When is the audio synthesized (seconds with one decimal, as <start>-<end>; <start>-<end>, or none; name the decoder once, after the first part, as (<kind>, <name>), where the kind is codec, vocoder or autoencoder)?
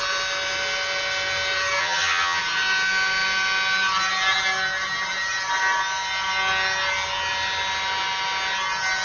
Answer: 1.8-2.4 (vocoder, HiFi-GAN)